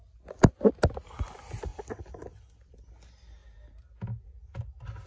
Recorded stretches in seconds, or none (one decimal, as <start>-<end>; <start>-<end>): 0.0-5.1